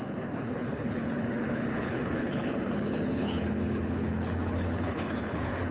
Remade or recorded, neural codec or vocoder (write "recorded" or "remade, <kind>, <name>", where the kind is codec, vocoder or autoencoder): remade, codec, HILCodec